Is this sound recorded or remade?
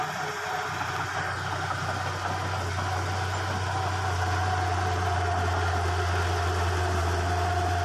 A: recorded